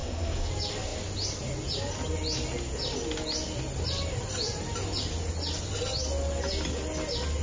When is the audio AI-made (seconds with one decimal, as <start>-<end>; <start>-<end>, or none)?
0.0-0.5